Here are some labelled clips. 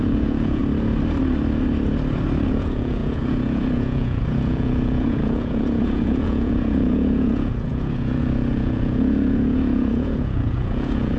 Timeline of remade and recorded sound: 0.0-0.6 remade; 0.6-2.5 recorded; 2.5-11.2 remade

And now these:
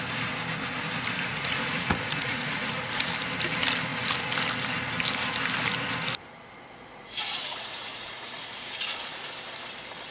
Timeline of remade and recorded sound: 0.0-1.3 recorded; 1.3-3.1 remade; 3.1-6.9 recorded; 6.9-9.3 remade; 9.3-10.1 recorded

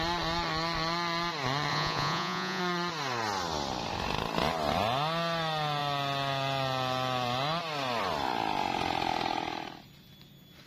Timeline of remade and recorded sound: 0.0-1.7 recorded; 1.7-2.6 remade; 2.6-10.7 recorded